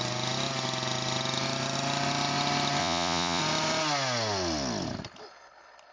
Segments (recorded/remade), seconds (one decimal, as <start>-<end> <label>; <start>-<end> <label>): 0.0-2.8 recorded; 2.8-3.4 remade; 3.4-5.9 recorded